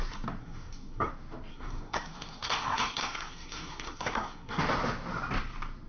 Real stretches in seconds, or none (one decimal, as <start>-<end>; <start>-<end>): 0.0-0.4; 1.1-1.5; 4.6-5.9